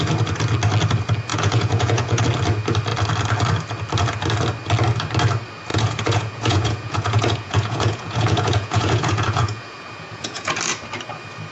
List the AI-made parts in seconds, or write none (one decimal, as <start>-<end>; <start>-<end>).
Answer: 1.3-2.2; 5.7-10.5